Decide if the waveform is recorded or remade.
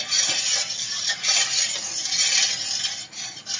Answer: recorded